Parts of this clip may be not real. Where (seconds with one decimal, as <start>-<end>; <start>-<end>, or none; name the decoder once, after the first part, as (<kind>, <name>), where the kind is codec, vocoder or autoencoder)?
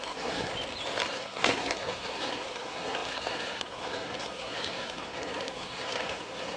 0.0-0.5 (codec, SNAC); 1.1-6.6